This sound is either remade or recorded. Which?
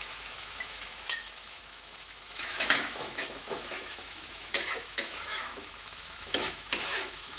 remade